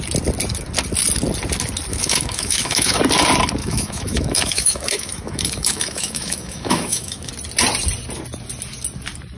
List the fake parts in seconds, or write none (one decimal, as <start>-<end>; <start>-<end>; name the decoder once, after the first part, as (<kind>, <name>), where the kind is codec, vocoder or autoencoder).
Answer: 1.9-3.0 (autoencoder, DAC-VAE); 3.6-7.3